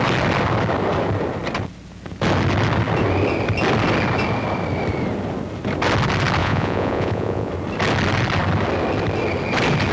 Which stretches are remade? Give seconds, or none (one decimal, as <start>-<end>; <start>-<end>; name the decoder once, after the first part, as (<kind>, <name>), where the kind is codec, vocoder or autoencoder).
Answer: 6.4-7.5 (vocoder, Vocos)

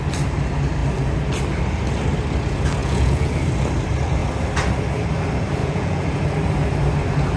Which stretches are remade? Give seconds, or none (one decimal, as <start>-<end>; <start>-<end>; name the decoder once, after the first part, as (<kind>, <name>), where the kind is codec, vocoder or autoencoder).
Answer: 2.8-3.3 (vocoder, Vocos); 5.6-6.1